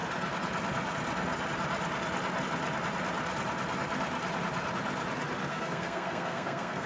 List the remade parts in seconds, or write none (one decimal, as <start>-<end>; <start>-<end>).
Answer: 5.5-6.9